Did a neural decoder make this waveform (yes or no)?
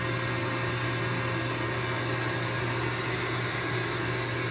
no